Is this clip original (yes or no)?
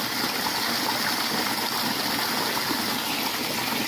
yes